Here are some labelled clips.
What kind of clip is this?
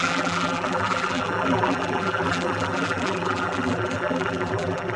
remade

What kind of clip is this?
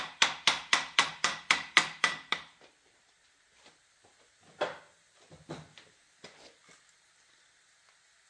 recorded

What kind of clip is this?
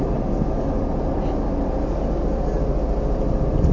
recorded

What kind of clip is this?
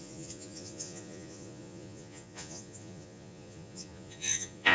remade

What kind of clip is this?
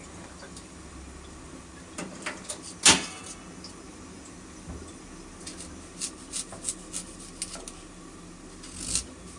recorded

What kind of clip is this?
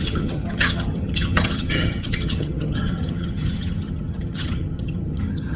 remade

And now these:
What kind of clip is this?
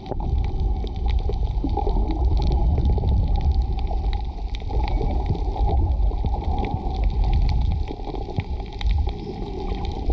remade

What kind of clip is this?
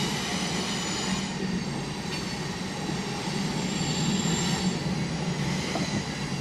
recorded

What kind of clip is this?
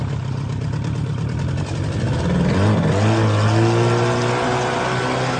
recorded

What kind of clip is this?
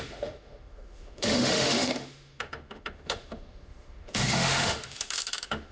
remade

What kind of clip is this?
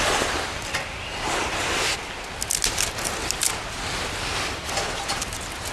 recorded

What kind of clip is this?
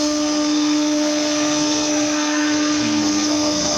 remade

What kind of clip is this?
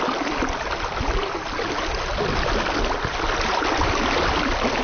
recorded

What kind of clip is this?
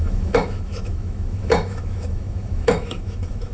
remade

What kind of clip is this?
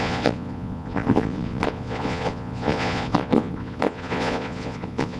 remade